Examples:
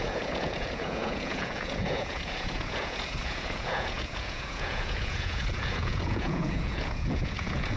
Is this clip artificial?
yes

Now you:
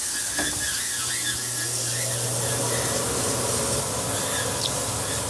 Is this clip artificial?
no